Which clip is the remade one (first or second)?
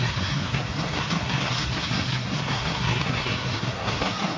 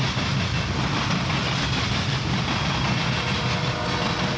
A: first